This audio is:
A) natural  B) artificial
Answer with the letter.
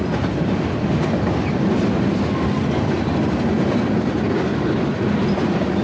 A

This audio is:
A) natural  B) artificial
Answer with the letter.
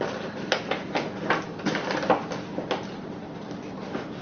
A